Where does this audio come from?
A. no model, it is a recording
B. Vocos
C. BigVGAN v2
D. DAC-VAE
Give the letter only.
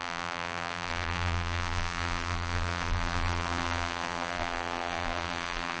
C